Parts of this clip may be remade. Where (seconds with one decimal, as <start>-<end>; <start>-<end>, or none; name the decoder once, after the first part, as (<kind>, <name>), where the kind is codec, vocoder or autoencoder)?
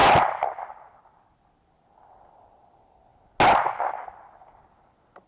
none